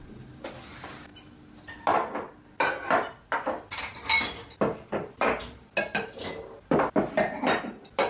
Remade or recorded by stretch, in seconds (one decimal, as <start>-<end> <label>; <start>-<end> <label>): 0.0-8.1 recorded